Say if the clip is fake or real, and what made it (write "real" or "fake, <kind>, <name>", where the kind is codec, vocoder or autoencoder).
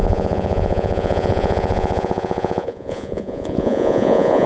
fake, vocoder, Vocos